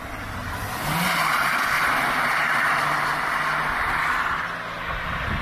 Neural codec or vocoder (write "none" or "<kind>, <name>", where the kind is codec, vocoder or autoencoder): none